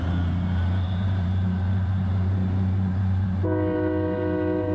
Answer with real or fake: fake